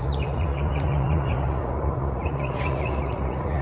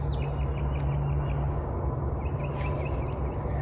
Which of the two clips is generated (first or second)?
first